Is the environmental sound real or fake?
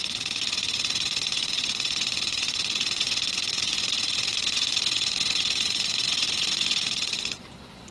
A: fake